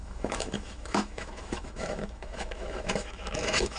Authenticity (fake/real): fake